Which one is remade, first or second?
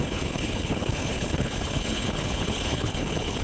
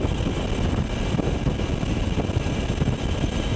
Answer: first